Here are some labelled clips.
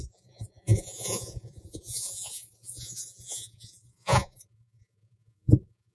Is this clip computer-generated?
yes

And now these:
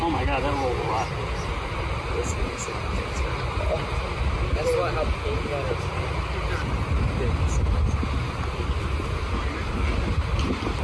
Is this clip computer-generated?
no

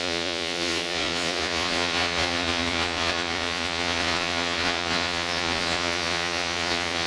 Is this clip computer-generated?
yes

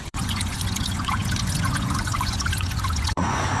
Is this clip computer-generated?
yes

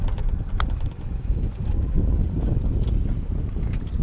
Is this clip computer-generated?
no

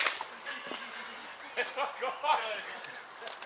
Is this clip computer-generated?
no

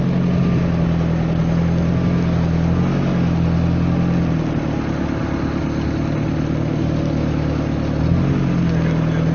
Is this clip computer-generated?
no